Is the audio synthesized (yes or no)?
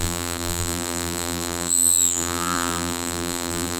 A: yes